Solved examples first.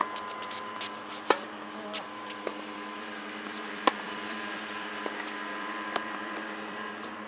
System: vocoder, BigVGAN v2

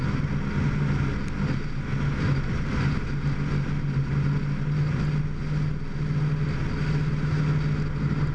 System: none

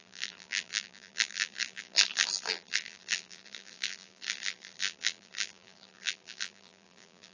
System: vocoder, BigVGAN v2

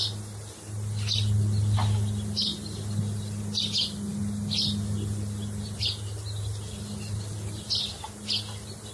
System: none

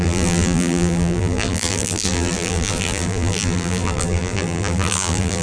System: vocoder, BigVGAN v2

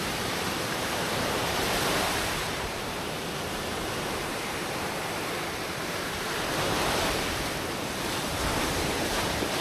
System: vocoder, BigVGAN v2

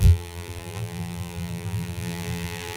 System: vocoder, BigVGAN v2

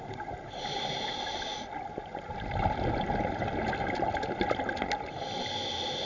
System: none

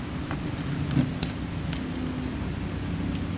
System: none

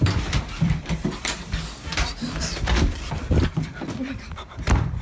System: vocoder, BigVGAN v2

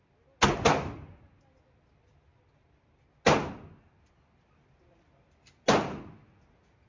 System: none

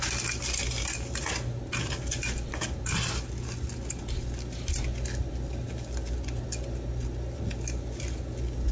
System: none